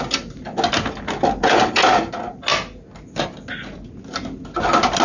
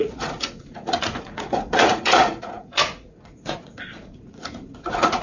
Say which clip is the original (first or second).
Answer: first